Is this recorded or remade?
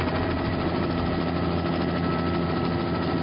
recorded